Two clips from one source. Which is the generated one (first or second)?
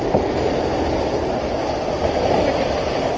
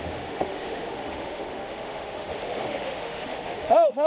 second